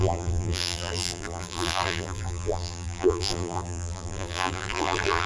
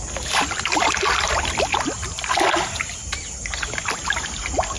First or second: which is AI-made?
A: first